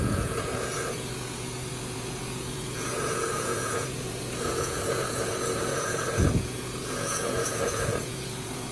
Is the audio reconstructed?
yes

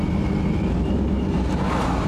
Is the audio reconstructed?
no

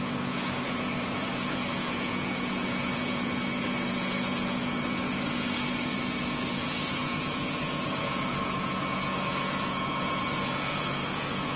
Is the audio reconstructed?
yes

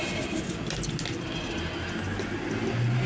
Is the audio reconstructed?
no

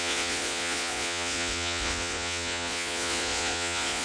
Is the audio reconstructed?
yes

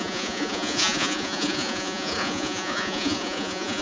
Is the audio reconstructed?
yes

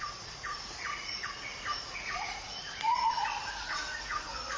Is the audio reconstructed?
yes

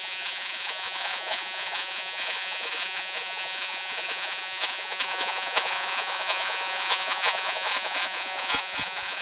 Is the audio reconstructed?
yes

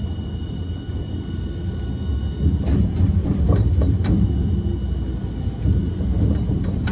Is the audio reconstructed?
no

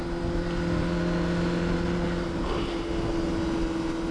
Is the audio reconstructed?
no